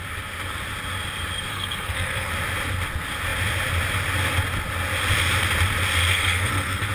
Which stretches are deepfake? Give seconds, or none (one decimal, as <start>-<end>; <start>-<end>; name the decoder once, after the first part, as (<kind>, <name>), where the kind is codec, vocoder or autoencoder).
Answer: 1.5-2.3 (codec, SNAC); 6.1-6.9